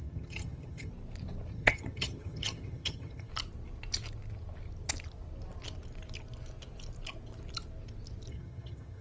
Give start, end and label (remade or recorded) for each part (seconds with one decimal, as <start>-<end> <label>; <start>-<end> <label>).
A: 0.0-0.9 remade; 0.9-1.5 recorded; 1.5-3.3 remade; 3.3-8.3 recorded; 8.3-9.0 remade